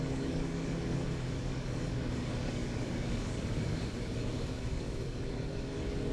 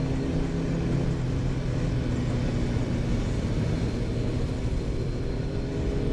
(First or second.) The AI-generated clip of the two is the first